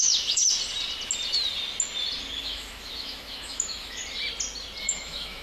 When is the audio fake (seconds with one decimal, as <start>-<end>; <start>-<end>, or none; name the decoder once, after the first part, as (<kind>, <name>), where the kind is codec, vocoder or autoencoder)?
0.0-0.4 (autoencoder, DAC-VAE); 2.4-4.0; 4.8-5.4